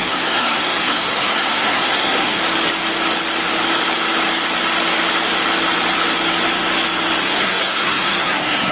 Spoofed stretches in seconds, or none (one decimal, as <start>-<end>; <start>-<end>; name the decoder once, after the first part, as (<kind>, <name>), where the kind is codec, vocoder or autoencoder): 0.0-2.4 (codec, SNAC); 7.2-8.7